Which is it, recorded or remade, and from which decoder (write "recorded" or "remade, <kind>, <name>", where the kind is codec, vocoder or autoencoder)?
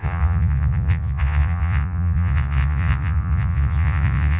remade, vocoder, Vocos